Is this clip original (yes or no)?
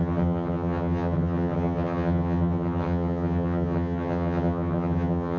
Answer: no